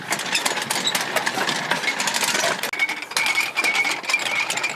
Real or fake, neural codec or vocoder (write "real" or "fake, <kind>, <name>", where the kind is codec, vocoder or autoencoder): real